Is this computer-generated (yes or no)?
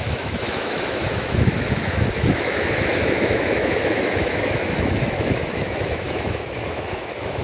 yes